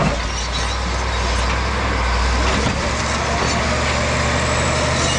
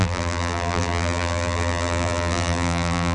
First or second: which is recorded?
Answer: first